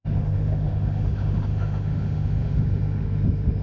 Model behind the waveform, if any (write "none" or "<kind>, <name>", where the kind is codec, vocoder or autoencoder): autoencoder, DAC-VAE